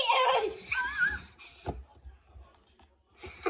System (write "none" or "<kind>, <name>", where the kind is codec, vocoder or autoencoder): none